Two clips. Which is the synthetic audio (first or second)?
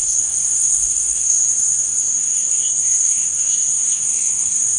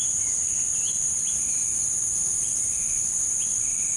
first